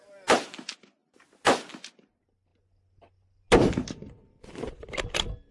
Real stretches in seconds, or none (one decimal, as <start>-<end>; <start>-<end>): 0.0-5.5